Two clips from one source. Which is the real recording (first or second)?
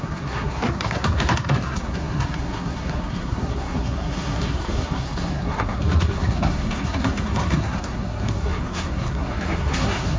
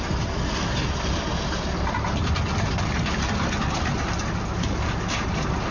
second